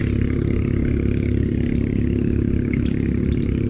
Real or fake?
fake